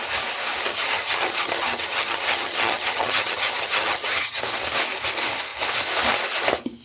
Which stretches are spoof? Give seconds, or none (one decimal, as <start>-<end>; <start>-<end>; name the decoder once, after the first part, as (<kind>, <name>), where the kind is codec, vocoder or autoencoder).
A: 0.7-4.4 (vocoder, HiFi-GAN)